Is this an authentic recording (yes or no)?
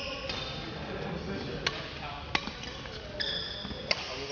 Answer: yes